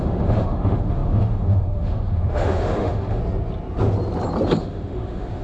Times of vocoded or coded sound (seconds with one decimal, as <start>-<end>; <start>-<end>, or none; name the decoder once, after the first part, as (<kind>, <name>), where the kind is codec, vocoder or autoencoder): 0.0-3.2 (autoencoder, DAC-VAE); 4.6-5.4